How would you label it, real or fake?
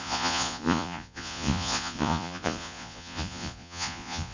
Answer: fake